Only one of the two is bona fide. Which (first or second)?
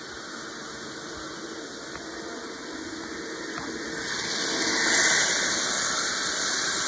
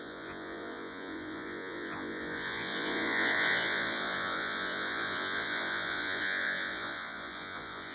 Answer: first